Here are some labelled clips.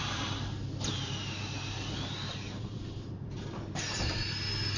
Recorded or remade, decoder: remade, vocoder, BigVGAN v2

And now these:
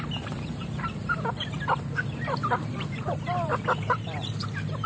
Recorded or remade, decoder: remade, vocoder, BigVGAN v2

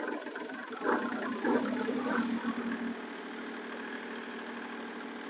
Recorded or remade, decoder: recorded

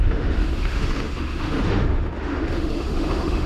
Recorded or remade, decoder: remade, autoencoder, DAC-VAE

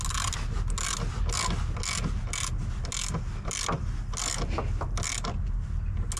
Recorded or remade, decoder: recorded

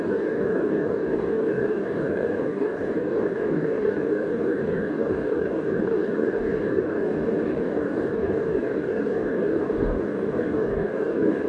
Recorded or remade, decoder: remade, codec, DAC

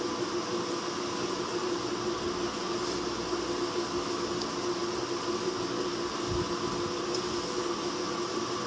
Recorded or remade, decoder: recorded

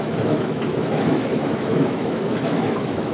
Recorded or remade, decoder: remade, autoencoder, DAC-VAE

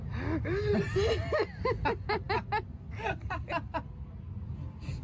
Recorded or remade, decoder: recorded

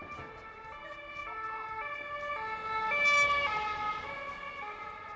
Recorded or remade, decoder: recorded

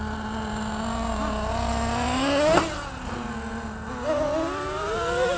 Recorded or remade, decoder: recorded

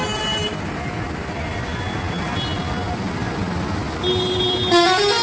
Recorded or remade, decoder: recorded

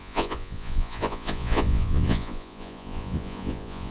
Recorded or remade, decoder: remade, vocoder, Vocos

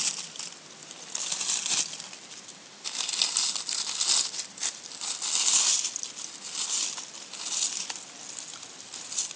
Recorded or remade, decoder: recorded